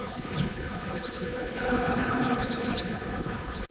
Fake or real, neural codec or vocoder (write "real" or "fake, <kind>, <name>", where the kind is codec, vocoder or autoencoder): fake, codec, HILCodec